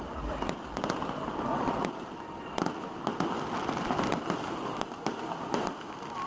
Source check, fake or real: fake